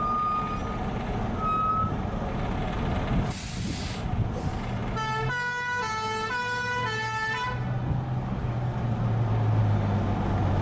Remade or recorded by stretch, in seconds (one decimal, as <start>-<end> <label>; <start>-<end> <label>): 0.0-10.6 recorded